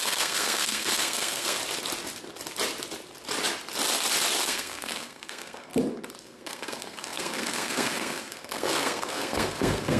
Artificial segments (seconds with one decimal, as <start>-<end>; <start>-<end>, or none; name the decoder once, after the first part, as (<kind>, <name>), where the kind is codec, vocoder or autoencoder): 0.0-1.6 (codec, SNAC); 4.4-5.7; 6.2-10.0